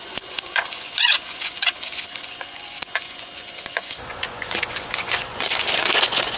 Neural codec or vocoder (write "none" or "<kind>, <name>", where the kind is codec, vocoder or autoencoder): vocoder, Vocos